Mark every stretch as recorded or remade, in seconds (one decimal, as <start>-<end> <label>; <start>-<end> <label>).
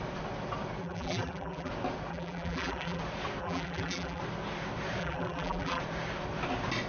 0.0-0.8 recorded; 0.8-1.7 remade; 1.7-2.1 recorded; 2.1-3.0 remade; 3.0-3.4 recorded; 3.4-4.2 remade; 4.2-5.0 recorded; 5.0-5.8 remade; 5.8-6.9 recorded